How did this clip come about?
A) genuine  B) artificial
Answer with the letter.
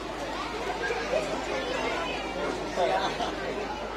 A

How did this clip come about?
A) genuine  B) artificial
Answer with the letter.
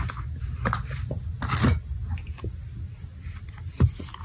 A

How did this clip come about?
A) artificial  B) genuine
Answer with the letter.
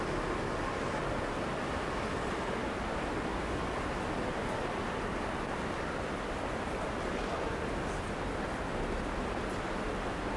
B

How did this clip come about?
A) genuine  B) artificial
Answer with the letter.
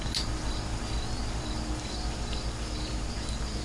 A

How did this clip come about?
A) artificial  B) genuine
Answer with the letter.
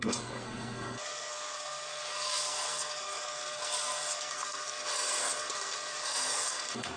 A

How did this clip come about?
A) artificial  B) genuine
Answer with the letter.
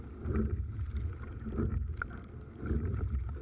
B